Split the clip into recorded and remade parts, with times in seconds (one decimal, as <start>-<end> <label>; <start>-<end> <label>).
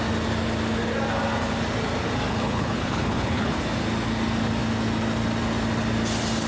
0.0-2.3 recorded; 2.3-3.5 remade; 3.5-6.5 recorded